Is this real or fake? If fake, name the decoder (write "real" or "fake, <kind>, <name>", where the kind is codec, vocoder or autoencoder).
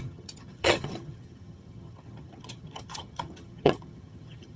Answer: fake, vocoder, HiFi-GAN